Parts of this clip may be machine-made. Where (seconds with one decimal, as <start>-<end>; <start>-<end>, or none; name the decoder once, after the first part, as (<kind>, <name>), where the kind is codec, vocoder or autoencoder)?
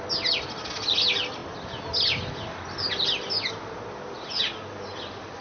none